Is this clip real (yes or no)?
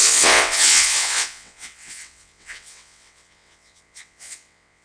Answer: no